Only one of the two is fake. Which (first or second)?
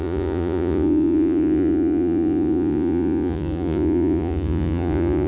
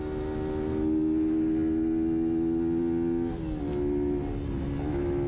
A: first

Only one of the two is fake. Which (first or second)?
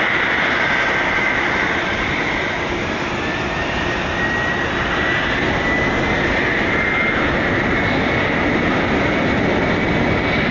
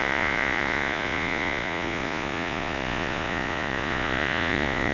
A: second